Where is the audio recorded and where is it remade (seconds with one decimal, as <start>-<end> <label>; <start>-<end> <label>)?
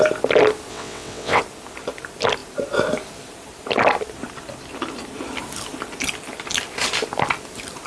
0.0-0.7 recorded; 0.7-1.4 remade; 1.4-7.9 recorded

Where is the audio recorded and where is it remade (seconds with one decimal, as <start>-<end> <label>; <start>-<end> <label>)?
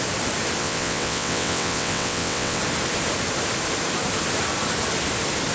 0.0-0.6 recorded; 0.6-2.6 remade; 2.6-5.5 recorded